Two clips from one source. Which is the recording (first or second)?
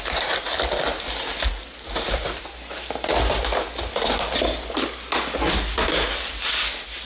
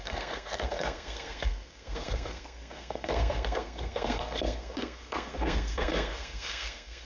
first